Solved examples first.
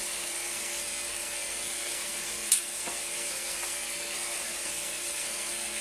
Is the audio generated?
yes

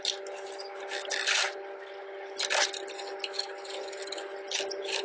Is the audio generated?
no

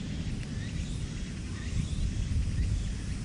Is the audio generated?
no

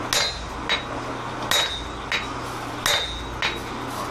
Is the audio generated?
no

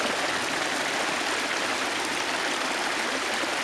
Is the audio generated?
no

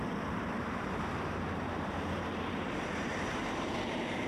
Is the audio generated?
yes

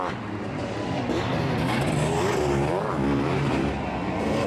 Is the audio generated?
no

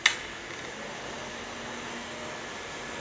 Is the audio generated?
no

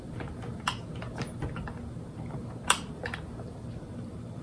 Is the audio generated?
no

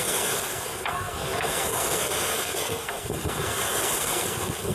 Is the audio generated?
yes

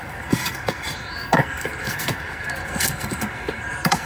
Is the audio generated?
yes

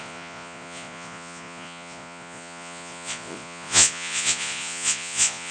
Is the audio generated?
yes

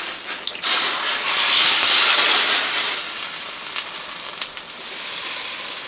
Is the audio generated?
no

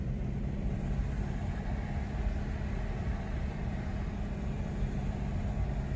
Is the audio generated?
no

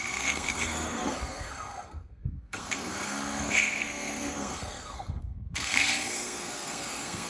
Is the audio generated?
yes